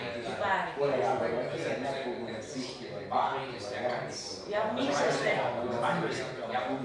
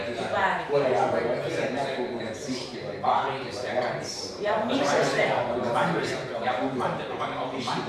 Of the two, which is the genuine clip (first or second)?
first